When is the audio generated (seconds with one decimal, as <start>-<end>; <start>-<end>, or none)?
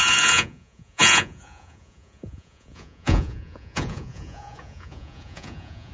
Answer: 0.0-5.9